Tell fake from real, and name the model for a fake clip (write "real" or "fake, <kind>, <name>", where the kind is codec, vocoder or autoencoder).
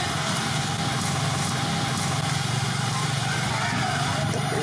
real